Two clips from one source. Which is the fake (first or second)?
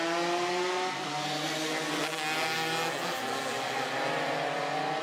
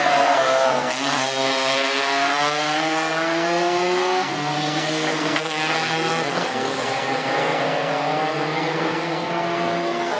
second